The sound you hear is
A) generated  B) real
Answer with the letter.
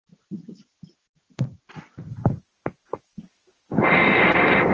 B